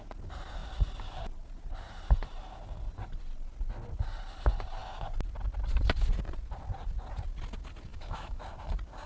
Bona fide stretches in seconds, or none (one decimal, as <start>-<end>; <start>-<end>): 0.0-7.9; 8.4-9.1